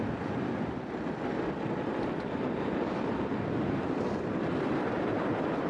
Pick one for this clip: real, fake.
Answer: fake